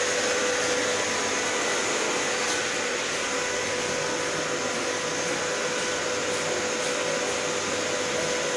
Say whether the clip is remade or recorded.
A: recorded